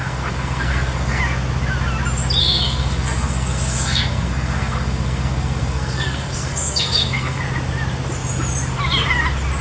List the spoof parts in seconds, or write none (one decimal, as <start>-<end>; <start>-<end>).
0.0-1.2; 2.4-7.4